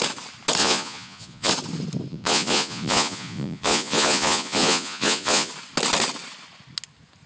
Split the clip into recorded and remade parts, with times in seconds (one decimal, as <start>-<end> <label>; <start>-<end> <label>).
0.0-0.6 recorded; 0.6-1.5 remade; 1.5-2.1 recorded; 2.1-5.5 remade; 5.5-7.3 recorded